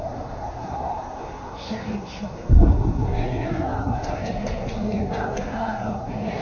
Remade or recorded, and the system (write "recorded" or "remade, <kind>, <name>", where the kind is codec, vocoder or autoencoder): remade, codec, SNAC